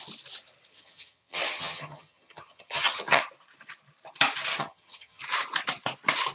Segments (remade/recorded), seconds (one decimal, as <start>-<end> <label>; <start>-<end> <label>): 0.0-0.7 recorded; 0.7-3.2 remade; 3.2-4.5 recorded; 4.5-5.2 remade; 5.2-6.3 recorded